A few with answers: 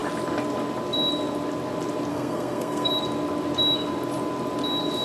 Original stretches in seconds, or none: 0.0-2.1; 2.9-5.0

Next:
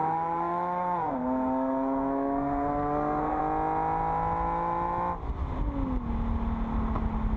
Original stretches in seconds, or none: 3.4-7.4